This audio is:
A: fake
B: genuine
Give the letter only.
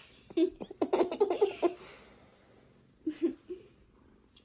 B